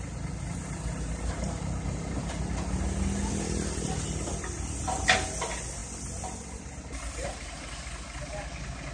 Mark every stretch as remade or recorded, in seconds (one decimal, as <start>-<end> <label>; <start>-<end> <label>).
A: 0.0-8.9 recorded